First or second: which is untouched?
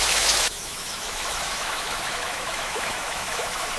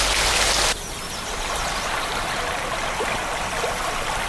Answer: second